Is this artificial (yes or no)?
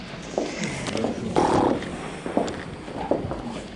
no